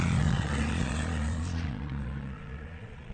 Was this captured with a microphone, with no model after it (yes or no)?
no